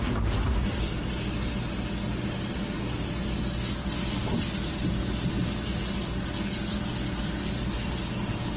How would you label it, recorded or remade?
recorded